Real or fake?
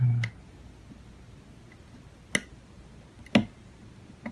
real